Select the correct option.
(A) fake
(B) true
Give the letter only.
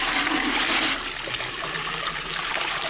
B